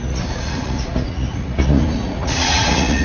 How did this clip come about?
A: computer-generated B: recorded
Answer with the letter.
A